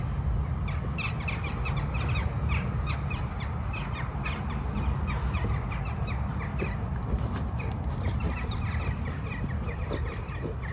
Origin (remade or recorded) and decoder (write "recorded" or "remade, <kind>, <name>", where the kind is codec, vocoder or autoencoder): recorded